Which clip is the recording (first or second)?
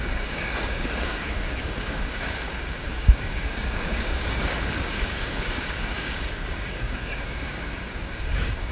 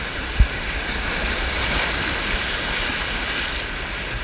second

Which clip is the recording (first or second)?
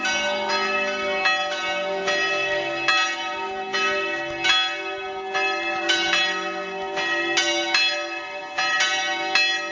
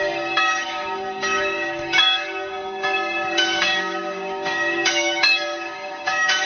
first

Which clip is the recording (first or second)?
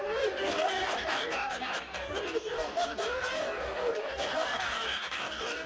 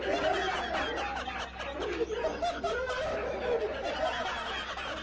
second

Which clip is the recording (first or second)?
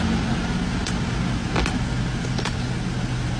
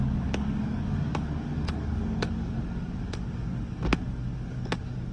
first